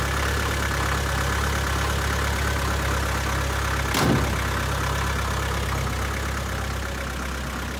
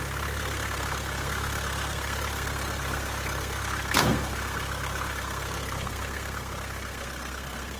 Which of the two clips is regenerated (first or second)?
second